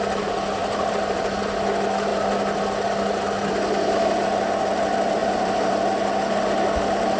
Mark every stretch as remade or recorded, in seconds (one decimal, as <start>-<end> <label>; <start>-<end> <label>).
0.0-0.6 recorded; 0.6-1.4 remade; 1.4-5.2 recorded; 5.2-5.7 remade; 5.7-7.2 recorded